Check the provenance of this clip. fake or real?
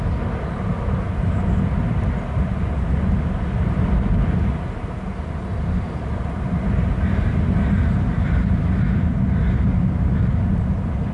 real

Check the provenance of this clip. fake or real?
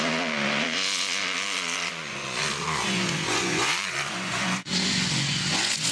fake